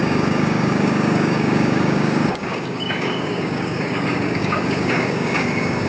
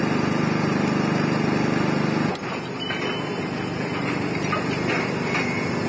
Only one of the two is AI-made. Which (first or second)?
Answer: first